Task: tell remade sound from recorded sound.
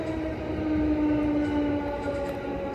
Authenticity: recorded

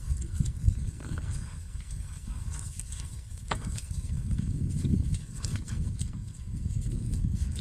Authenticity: remade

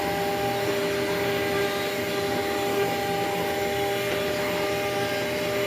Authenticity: recorded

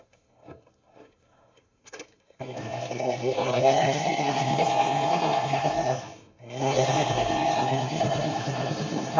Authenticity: remade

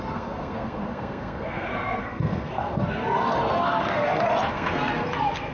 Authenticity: remade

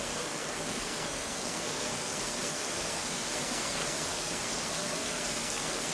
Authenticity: remade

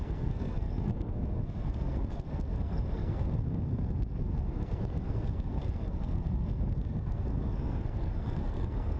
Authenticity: remade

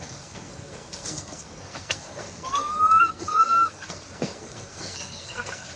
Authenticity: remade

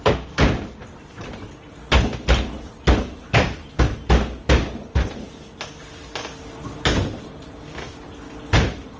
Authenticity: recorded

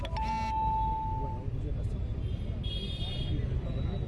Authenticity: recorded